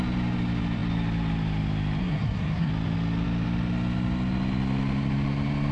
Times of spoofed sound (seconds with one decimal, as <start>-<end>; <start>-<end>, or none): 2.0-2.7